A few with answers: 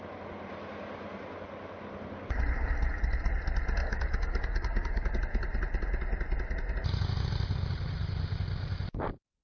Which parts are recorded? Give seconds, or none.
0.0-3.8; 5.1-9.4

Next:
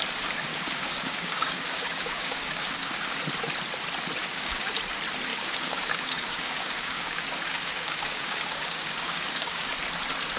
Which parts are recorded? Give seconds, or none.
0.0-0.5; 3.2-4.2; 4.7-5.3; 9.7-10.4

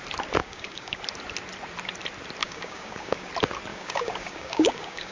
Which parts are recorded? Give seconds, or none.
0.0-0.4; 1.0-2.4; 3.3-3.7

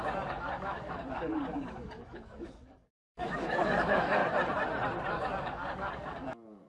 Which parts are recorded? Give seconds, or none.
4.2-5.1

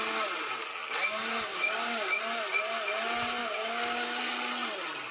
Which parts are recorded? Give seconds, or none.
0.0-1.5; 2.2-3.4; 4.2-5.1

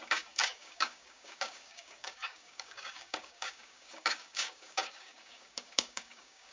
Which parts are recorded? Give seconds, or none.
none

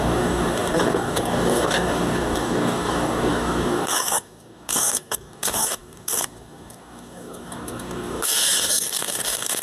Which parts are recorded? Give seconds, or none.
none

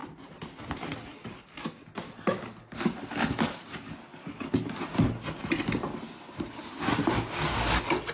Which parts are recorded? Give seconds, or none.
0.0-2.6; 3.6-4.1; 4.8-8.1